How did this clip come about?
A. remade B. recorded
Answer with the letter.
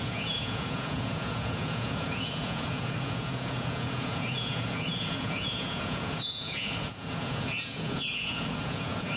A